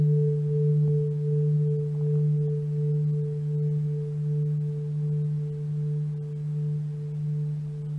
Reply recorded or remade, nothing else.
recorded